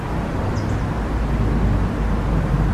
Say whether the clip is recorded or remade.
recorded